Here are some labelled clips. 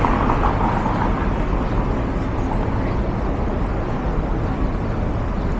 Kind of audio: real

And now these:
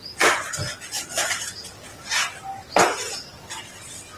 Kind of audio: real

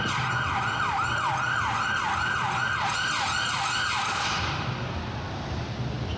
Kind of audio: real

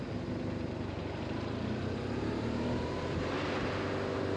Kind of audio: real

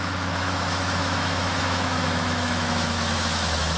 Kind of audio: fake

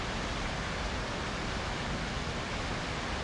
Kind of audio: real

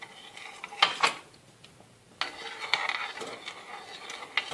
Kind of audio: real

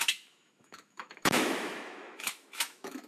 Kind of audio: fake